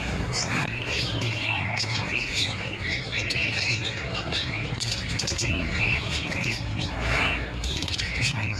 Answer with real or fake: fake